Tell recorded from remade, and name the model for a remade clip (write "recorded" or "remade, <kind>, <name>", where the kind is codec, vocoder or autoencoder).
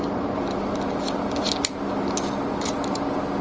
recorded